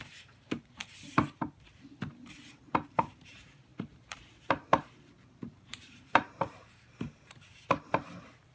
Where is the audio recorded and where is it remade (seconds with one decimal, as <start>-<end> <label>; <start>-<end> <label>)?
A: 0.0-8.5 remade